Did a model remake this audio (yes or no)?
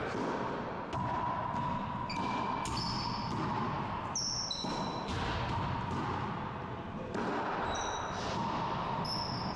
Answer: no